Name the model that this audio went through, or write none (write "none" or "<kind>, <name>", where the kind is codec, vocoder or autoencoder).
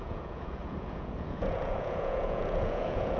vocoder, Vocos